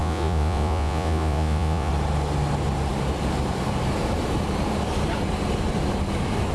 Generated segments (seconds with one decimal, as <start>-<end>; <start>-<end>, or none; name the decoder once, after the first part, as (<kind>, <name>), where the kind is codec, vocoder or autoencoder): 0.0-1.9 (vocoder, Vocos)